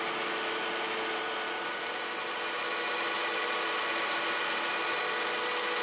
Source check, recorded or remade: recorded